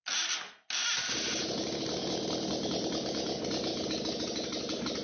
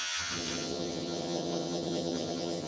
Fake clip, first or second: second